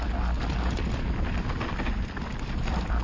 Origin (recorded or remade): recorded